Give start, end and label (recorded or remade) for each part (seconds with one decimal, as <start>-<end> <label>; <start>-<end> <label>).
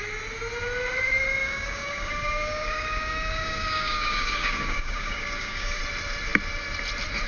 0.0-1.4 recorded; 1.4-5.8 remade; 5.8-7.3 recorded